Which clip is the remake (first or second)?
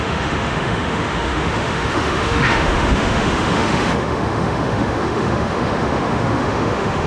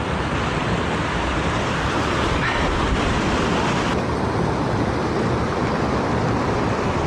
first